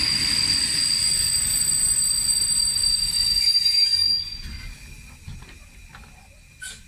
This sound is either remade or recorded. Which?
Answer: recorded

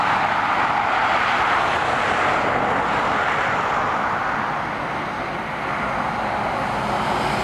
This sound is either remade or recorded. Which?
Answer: recorded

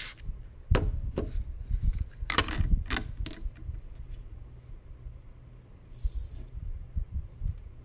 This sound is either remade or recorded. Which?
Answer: recorded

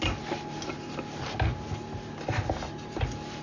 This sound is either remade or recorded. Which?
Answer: recorded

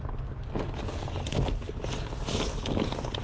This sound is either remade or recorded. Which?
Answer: recorded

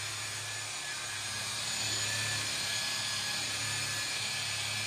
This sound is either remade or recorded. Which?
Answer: recorded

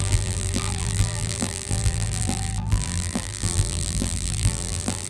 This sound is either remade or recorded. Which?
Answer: remade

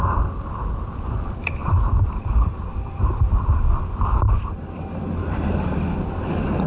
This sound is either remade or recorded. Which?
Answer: remade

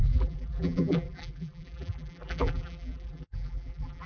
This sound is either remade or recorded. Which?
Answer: remade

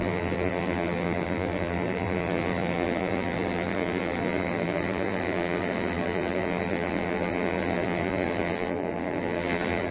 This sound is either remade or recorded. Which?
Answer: remade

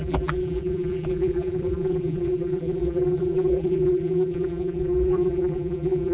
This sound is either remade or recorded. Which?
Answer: remade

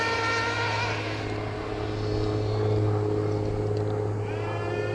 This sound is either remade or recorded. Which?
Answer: recorded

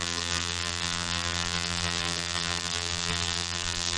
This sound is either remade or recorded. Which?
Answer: remade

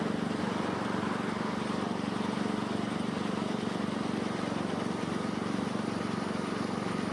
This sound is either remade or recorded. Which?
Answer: recorded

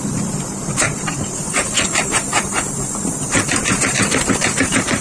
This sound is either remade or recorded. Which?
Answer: remade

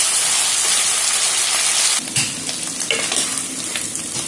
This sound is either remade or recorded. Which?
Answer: recorded